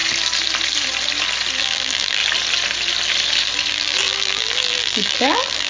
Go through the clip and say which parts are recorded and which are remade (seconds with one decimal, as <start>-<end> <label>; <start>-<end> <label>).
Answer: 0.0-1.6 recorded; 1.6-2.2 remade; 2.2-3.7 recorded; 3.7-5.7 remade